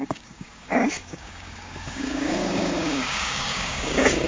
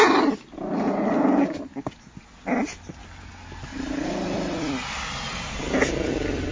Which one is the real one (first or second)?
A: second